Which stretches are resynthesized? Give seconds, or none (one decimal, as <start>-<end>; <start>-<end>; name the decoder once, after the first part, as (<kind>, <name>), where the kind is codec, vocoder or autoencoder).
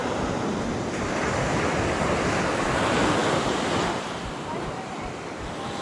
none